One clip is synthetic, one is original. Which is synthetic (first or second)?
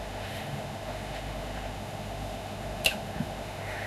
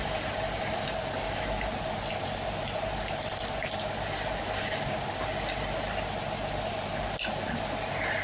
first